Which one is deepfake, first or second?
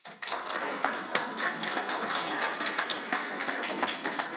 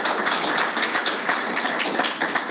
first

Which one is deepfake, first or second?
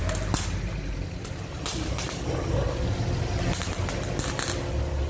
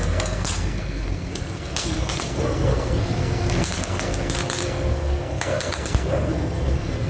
second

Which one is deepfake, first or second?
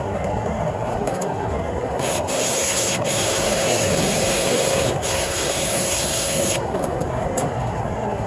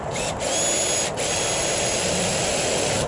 first